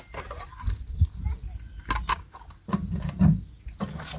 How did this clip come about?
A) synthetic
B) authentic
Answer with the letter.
B